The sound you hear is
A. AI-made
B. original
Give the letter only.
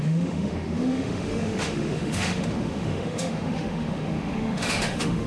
A